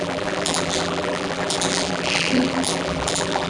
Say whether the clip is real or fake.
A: fake